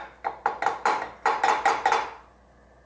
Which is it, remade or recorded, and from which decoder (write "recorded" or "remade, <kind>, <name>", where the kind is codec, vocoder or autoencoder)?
recorded